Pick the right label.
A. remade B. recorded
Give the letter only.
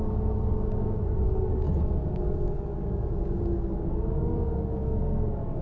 A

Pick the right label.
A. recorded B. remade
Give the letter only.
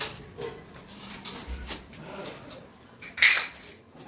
A